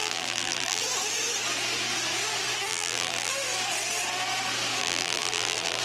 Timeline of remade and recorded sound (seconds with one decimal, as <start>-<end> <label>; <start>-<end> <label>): 0.0-0.8 remade; 0.8-2.7 recorded; 2.7-3.3 remade; 3.3-4.8 recorded; 4.8-5.8 remade